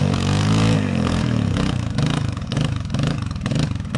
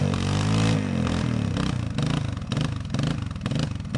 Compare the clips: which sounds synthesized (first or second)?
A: first